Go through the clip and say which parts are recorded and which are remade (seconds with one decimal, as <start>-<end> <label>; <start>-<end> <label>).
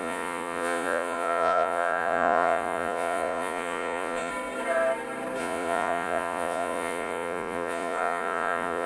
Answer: 0.0-4.3 remade; 4.3-5.4 recorded; 5.4-8.9 remade